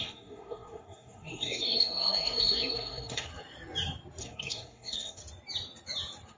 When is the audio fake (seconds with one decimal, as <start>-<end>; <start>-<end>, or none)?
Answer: 0.0-3.3; 4.2-5.2